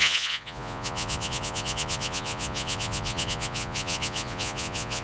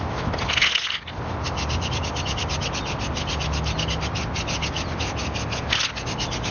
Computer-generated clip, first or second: first